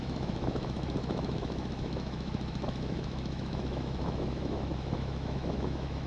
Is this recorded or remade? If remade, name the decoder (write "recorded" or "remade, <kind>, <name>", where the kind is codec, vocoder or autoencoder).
remade, autoencoder, DAC-VAE